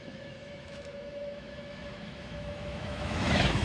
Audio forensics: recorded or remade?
remade